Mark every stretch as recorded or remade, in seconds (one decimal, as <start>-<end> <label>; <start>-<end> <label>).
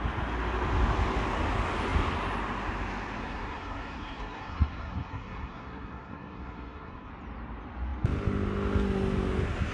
0.0-3.2 recorded; 3.2-7.1 remade; 7.1-9.7 recorded